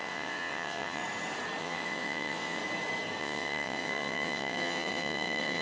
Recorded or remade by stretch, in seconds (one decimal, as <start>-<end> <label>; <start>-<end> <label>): 0.0-1.0 remade; 1.0-1.6 recorded; 1.6-2.6 remade; 2.6-3.2 recorded; 3.2-5.6 remade